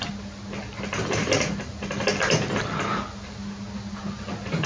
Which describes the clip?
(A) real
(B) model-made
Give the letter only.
A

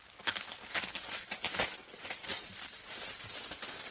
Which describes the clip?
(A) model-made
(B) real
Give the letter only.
B